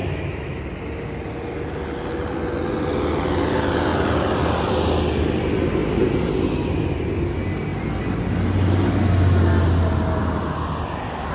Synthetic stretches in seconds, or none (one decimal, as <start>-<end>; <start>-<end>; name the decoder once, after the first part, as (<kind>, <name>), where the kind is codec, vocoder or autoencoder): 0.0-0.6 (autoencoder, DAC-VAE)